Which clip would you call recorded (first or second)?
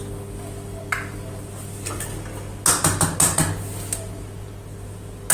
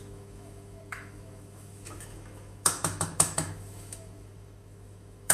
first